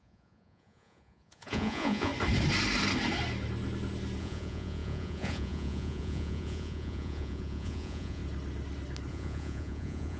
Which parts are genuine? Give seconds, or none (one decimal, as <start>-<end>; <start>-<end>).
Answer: 2.1-4.2; 8.2-9.1